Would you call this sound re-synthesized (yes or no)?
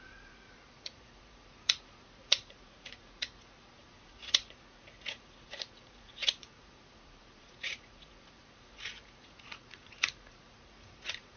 yes